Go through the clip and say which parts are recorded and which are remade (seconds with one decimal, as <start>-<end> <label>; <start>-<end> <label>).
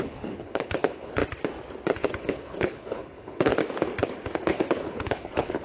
0.0-1.2 remade; 1.2-2.1 recorded; 2.1-3.5 remade; 3.5-4.5 recorded; 4.5-5.6 remade